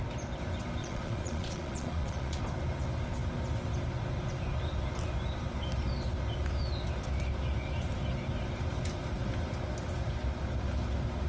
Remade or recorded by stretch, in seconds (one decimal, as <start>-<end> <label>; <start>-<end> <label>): 0.0-0.8 recorded; 0.8-2.4 remade; 2.4-11.3 recorded